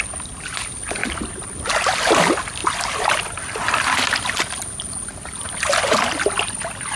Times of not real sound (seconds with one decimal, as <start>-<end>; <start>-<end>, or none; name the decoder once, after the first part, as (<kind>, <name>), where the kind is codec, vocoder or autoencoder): 1.0-1.6 (vocoder, BigVGAN v2); 2.6-5.8